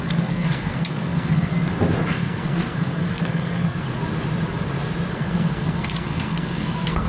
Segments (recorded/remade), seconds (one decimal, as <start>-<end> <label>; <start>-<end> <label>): 0.0-1.5 remade; 1.5-2.1 recorded; 2.1-3.9 remade; 3.9-5.1 recorded; 5.1-7.1 remade